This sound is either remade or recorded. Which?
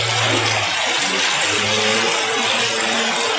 recorded